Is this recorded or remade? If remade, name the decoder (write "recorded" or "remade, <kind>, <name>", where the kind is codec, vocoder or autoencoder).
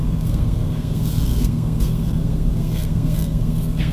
remade, codec, SNAC